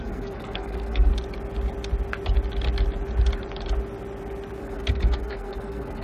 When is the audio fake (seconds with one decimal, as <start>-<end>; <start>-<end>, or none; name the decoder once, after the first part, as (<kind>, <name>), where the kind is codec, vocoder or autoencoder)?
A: 0.0-1.1 (codec, SNAC); 4.6-6.0